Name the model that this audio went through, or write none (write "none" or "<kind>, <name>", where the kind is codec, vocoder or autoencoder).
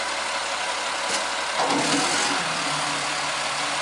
none